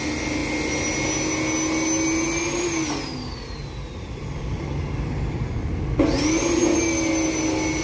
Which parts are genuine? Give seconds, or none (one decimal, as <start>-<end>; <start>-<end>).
0.0-7.8